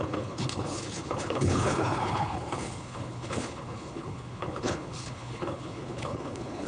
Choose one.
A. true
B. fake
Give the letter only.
B